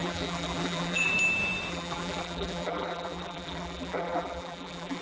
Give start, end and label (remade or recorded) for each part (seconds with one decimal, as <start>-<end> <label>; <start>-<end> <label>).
0.0-1.1 remade; 1.1-1.7 recorded; 1.7-5.0 remade